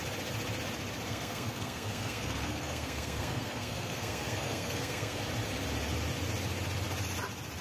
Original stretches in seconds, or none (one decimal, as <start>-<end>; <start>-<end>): 0.0-1.1; 5.2-7.6